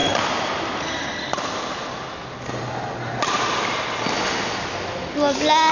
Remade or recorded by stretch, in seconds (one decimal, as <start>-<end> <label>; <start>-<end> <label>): 0.0-5.7 recorded

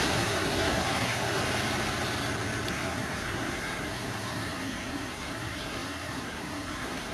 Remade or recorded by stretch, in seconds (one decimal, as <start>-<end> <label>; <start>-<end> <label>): 0.0-1.4 remade; 1.4-2.7 recorded; 2.7-7.1 remade

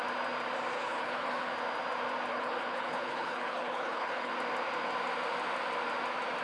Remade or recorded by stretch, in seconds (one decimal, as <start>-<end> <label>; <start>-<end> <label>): 0.0-0.7 recorded; 0.7-1.5 remade; 1.5-2.3 recorded; 2.3-4.3 remade; 4.3-6.4 recorded

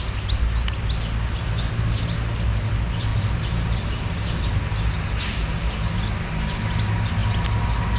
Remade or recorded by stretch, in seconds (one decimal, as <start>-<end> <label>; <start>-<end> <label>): 0.0-8.0 recorded